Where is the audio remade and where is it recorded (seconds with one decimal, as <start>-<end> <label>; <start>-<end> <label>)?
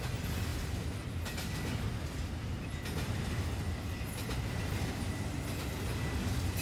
0.0-6.6 recorded